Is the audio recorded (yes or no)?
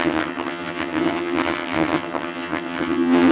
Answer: no